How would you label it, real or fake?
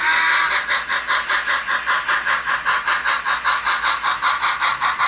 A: real